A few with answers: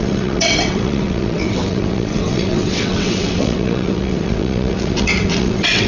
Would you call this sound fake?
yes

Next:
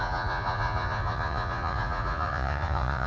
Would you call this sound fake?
yes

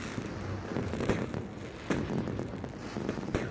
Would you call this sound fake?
no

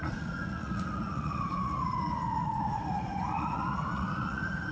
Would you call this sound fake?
yes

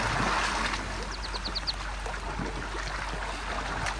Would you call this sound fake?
no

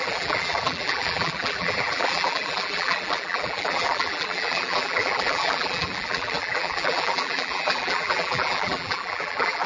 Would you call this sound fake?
yes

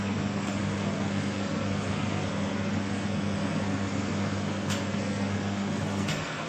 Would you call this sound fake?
yes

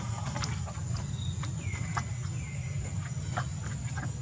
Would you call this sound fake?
no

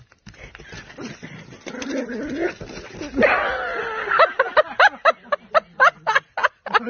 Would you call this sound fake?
no